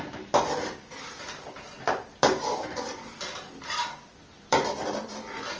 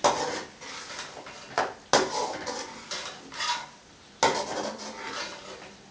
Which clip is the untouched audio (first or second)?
second